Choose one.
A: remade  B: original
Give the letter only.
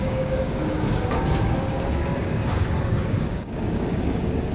A